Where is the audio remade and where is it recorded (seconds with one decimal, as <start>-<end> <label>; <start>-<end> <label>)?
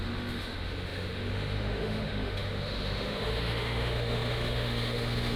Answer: 0.0-5.4 remade